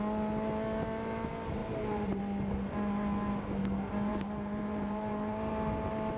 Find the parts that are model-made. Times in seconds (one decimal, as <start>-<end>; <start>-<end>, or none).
1.6-2.2; 4.1-5.5